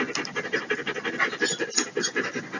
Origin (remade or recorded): recorded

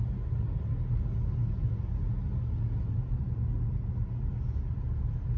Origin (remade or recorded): recorded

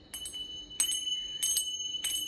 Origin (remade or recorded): recorded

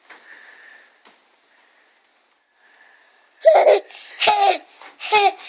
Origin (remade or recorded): recorded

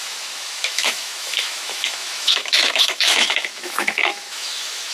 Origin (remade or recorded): remade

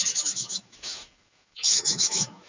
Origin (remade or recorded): remade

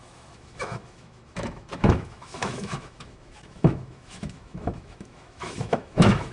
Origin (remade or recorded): remade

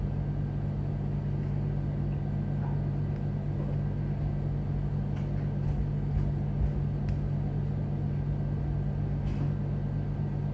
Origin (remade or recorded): recorded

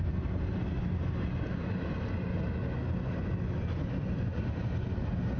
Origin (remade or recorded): recorded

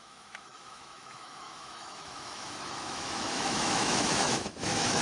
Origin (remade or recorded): remade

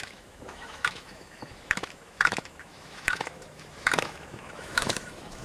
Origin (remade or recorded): remade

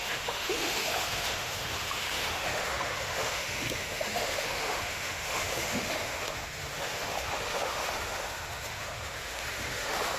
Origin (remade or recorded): remade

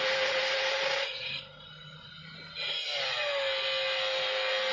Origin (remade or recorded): recorded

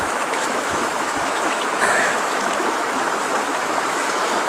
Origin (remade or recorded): remade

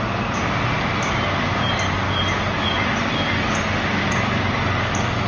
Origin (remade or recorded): recorded